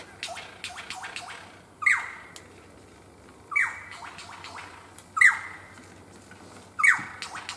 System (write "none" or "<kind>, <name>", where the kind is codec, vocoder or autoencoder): none